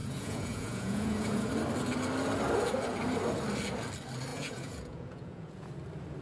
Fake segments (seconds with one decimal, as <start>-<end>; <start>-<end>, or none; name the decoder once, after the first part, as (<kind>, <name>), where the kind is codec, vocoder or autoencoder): 0.0-1.5 (vocoder, Vocos); 4.3-5.7